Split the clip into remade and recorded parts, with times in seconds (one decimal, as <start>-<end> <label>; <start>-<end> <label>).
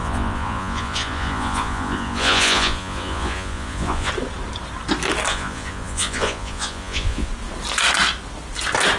0.0-4.1 remade; 4.1-5.3 recorded; 5.3-7.3 remade; 7.3-9.0 recorded